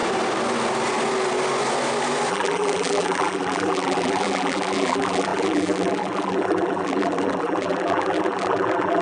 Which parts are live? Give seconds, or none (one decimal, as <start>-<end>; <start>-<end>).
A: 0.0-2.3